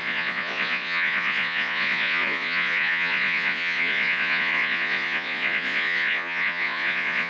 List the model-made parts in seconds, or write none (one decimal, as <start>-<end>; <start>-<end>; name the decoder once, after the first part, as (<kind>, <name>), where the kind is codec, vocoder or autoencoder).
0.0-7.3 (vocoder, Vocos)